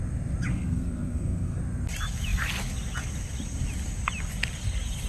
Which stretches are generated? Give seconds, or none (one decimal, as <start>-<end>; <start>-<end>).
0.5-1.6

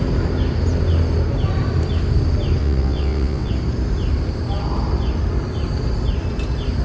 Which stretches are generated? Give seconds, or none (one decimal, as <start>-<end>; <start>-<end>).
2.6-3.5

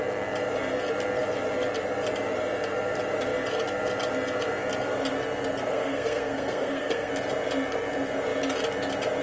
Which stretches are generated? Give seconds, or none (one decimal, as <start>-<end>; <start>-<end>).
5.7-7.1

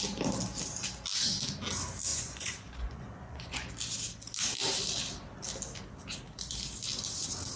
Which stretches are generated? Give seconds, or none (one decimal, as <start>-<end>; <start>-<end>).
2.1-3.7

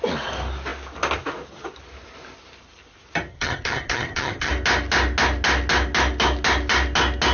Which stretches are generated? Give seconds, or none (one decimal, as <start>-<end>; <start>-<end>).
3.3-4.5

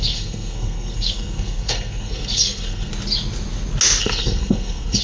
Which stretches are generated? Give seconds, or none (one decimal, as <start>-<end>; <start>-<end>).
0.0-2.9; 4.0-5.0

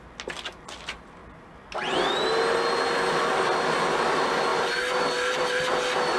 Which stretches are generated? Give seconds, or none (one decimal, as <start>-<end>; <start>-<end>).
none

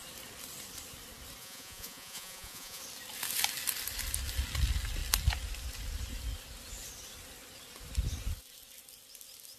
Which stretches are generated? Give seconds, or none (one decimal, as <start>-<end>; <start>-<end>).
1.4-2.8